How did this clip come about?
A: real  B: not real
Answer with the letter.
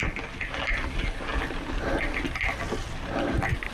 A